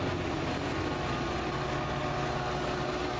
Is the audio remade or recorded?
recorded